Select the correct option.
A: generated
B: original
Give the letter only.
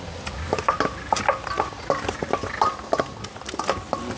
B